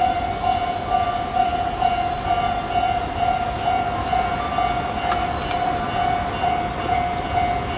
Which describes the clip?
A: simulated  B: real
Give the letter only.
B